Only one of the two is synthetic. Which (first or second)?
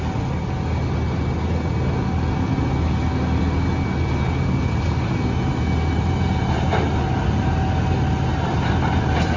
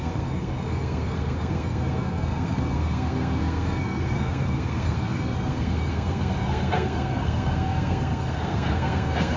second